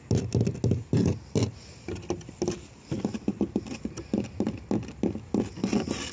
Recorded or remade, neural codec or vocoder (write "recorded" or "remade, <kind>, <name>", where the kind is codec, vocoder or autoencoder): recorded